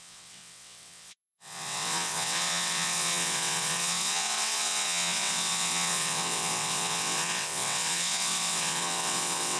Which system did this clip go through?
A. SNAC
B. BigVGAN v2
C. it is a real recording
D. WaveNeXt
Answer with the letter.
D